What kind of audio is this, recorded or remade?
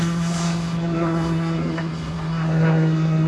remade